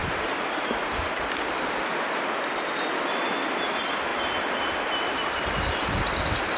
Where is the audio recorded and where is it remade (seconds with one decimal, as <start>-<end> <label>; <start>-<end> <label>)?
0.0-6.6 recorded